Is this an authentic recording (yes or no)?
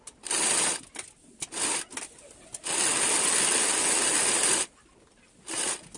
yes